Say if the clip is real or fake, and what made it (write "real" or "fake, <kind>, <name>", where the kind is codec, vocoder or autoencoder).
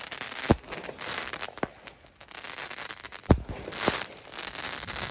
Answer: real